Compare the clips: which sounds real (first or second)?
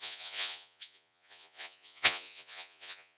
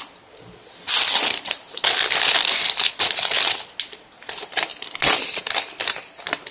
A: second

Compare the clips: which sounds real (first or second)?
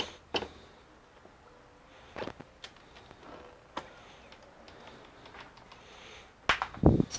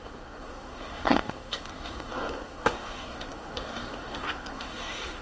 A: first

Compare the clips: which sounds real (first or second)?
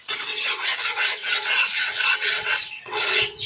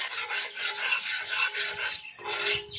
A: second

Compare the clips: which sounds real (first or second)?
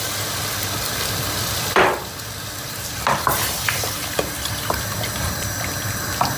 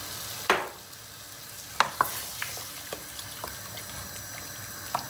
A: second